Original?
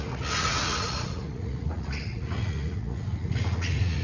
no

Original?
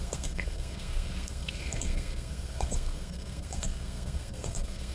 no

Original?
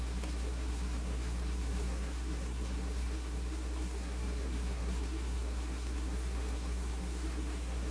no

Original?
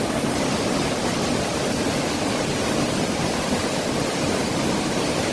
yes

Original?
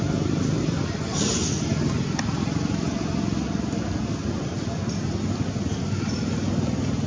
yes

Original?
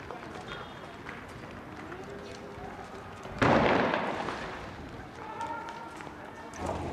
yes